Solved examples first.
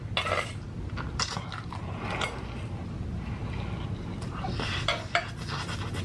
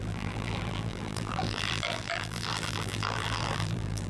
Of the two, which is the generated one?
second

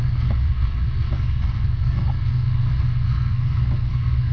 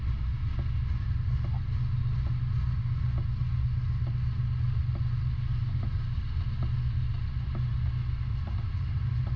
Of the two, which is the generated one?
first